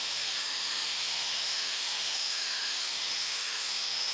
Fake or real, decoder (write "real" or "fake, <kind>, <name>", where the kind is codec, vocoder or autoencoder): fake, autoencoder, DAC-VAE